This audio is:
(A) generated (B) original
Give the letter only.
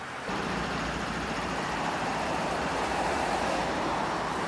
A